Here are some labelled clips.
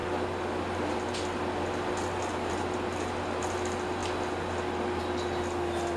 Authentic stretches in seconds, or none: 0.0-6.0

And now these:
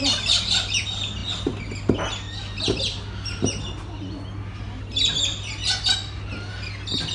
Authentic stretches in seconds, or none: 0.0-7.1

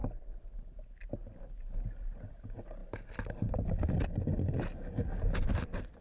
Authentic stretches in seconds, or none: 0.0-6.0

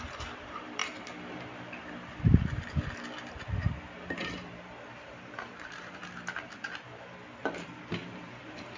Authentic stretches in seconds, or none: 0.8-4.2; 6.0-7.4